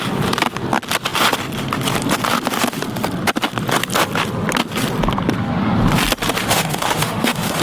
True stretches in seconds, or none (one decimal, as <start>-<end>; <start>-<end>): 0.0-6.4